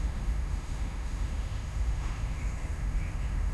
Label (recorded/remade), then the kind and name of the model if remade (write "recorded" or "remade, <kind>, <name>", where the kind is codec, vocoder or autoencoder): remade, autoencoder, DAC-VAE